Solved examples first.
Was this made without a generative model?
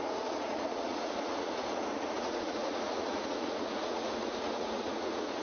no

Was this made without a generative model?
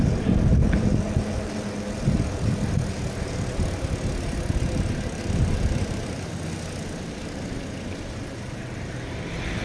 yes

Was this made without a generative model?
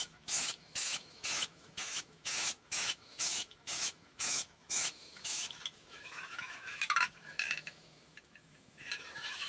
no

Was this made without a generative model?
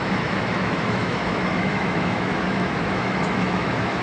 no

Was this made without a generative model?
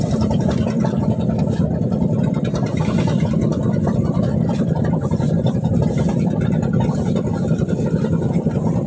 yes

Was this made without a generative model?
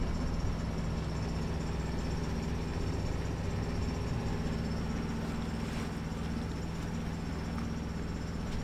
yes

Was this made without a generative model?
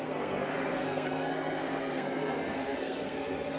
no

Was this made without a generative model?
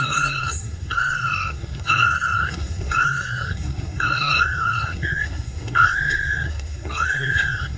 no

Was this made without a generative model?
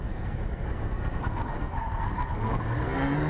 no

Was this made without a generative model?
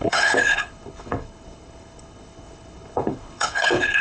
no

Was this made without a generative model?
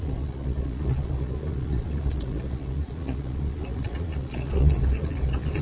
no